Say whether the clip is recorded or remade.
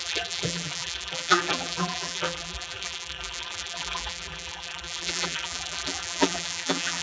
remade